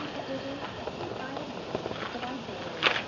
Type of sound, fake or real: real